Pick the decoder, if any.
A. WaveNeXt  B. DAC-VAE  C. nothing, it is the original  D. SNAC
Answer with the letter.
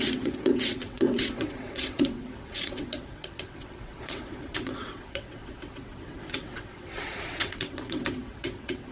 A